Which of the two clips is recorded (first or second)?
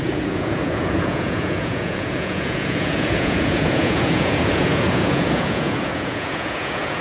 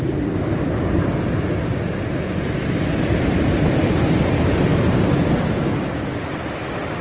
second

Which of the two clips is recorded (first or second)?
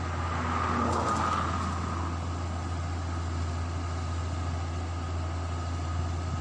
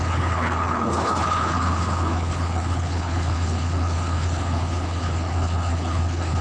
first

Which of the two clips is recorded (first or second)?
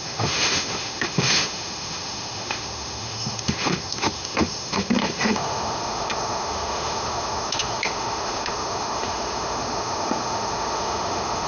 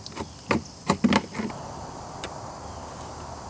second